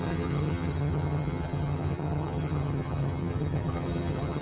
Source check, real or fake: fake